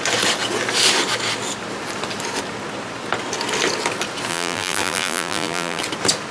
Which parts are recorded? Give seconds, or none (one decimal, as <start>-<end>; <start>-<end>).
0.0-4.3; 5.8-6.3

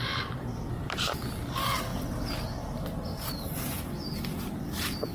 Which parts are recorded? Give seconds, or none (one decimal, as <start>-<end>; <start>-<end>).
0.0-0.5; 1.2-1.9; 2.7-3.1; 3.8-5.1